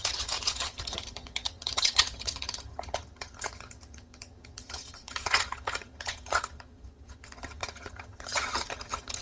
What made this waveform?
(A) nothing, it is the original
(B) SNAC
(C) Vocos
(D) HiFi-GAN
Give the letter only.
D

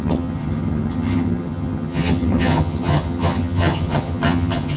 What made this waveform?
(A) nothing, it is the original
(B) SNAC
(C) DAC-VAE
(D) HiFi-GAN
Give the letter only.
D